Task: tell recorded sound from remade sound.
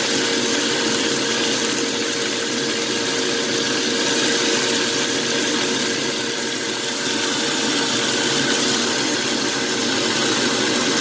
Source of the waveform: recorded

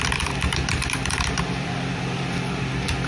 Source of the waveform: remade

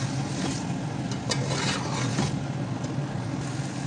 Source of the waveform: recorded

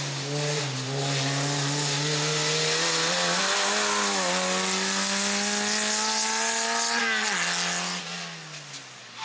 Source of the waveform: recorded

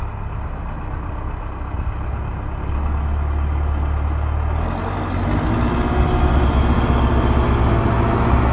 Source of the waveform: recorded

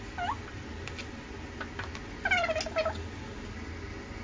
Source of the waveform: recorded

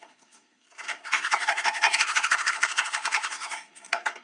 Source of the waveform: remade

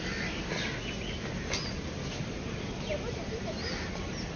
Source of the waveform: recorded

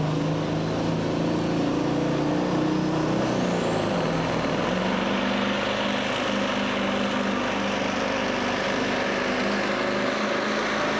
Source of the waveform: recorded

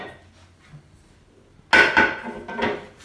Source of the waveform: recorded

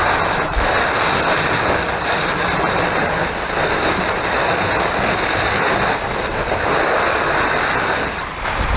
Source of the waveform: recorded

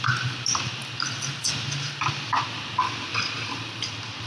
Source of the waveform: remade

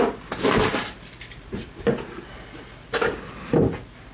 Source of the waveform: recorded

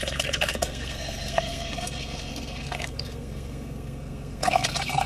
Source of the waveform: remade